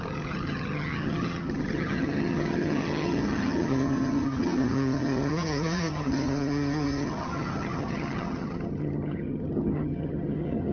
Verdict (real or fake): fake